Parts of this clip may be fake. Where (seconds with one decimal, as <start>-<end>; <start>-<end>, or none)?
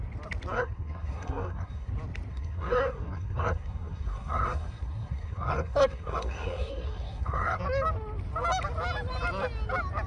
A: 0.5-1.9; 2.3-7.6